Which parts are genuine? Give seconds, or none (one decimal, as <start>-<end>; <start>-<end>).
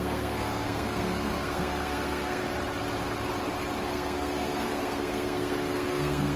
2.4-3.9